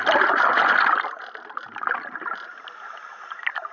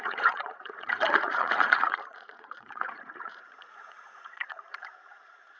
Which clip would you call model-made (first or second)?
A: second